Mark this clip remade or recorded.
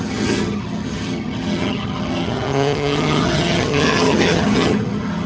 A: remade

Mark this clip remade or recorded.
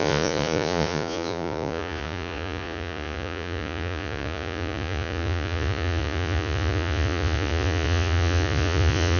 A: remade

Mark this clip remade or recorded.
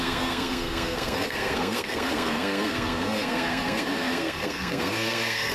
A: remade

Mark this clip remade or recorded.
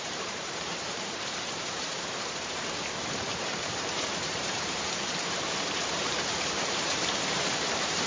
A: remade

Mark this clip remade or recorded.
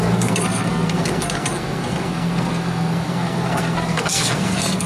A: remade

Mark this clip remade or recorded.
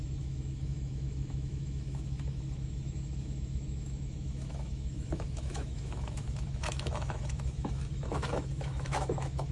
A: remade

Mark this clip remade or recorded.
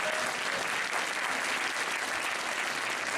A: recorded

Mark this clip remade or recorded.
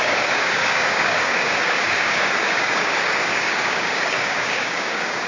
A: remade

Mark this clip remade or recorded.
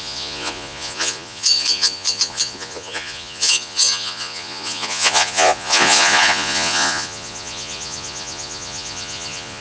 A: remade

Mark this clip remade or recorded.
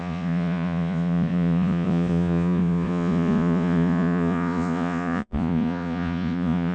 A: remade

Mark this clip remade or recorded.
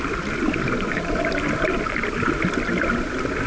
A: recorded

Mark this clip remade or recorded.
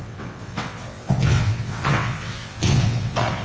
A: remade